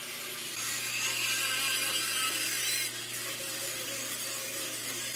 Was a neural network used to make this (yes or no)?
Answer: no